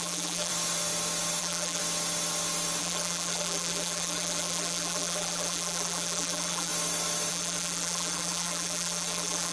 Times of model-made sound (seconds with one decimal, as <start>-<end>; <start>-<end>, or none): 0.0-0.5; 1.4-1.8; 2.8-6.7; 7.3-9.5